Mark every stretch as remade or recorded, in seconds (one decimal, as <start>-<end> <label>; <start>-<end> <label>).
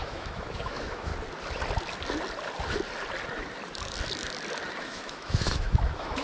0.0-1.1 remade; 1.1-4.8 recorded; 4.8-6.2 remade